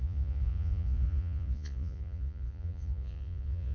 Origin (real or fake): fake